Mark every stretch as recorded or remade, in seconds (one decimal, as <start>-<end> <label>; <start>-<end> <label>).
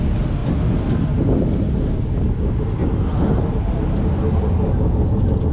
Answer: 0.0-5.5 recorded